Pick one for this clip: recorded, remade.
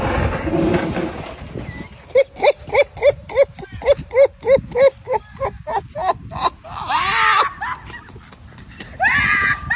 recorded